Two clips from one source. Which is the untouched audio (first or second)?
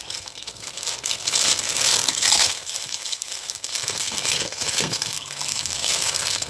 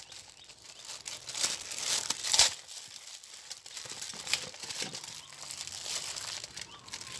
second